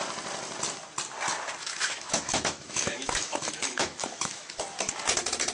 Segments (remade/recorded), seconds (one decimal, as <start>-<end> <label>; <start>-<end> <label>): 0.0-1.6 recorded; 1.6-4.6 remade; 4.6-5.5 recorded